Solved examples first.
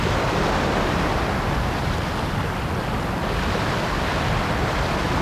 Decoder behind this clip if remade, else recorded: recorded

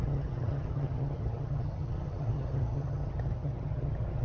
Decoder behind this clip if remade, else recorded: remade, vocoder, HiFi-GAN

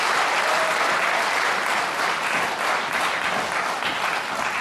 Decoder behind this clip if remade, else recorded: recorded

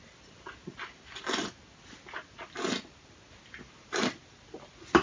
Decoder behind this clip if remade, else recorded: recorded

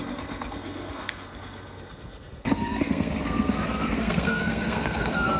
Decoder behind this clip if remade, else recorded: remade, codec, SNAC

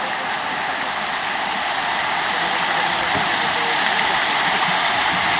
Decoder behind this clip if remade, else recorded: recorded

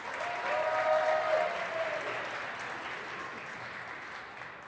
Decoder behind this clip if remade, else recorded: recorded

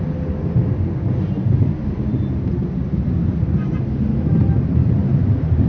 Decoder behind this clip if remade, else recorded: recorded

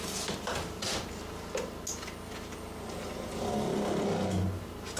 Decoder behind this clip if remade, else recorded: recorded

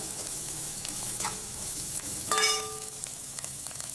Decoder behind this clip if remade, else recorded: remade, autoencoder, DAC-VAE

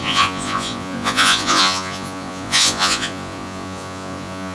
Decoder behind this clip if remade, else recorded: remade, vocoder, Vocos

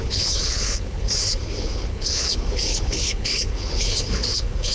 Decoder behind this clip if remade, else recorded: remade, codec, HILCodec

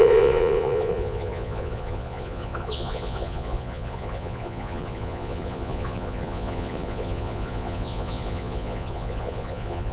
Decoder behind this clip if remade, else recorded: remade, vocoder, Vocos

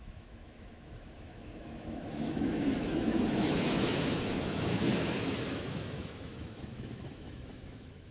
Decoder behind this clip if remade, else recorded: remade, autoencoder, DAC-VAE